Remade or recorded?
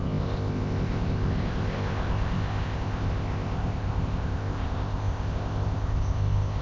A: remade